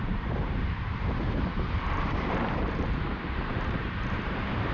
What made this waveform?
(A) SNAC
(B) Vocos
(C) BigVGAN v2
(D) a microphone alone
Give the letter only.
C